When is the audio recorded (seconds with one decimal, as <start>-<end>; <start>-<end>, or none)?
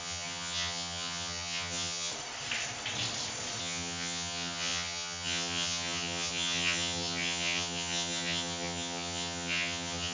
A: 2.1-3.6